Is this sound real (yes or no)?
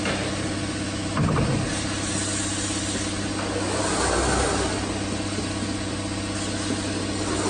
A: yes